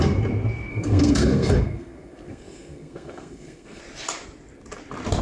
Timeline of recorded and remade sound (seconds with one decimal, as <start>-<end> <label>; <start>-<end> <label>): 0.0-0.7 recorded; 0.7-3.8 remade; 3.8-5.2 recorded